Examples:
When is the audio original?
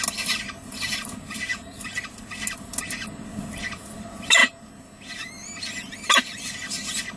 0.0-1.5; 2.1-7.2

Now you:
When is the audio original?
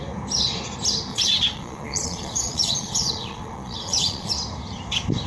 0.0-1.1; 4.3-5.3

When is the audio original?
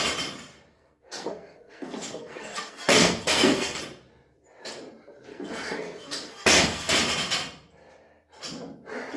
0.0-0.7; 3.8-5.3; 6.9-9.2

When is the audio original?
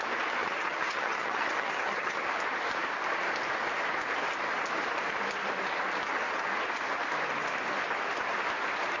0.0-0.4; 2.2-9.0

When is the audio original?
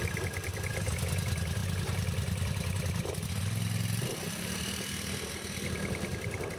0.0-6.6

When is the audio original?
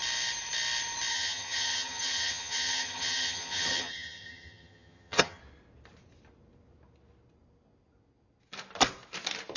0.0-1.1; 5.4-9.6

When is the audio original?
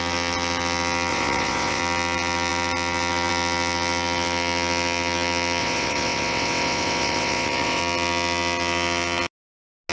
0.0-1.1; 1.8-5.6; 7.8-9.9